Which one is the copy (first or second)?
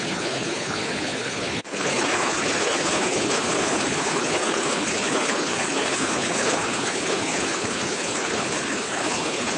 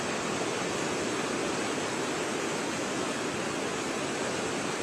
first